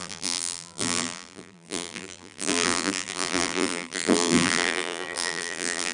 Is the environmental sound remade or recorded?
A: remade